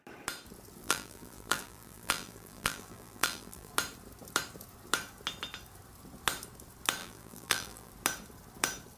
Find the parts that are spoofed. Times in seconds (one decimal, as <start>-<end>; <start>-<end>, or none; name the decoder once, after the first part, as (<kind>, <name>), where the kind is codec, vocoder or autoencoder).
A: 0.8-3.7 (vocoder, BigVGAN v2); 7.0-7.9